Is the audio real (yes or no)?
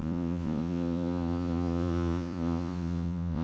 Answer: no